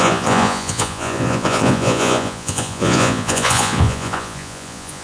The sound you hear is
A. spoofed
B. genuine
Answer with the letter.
A